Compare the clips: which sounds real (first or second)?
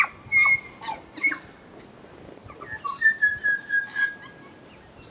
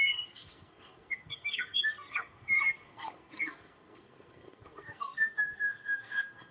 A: first